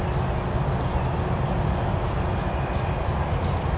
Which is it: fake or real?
real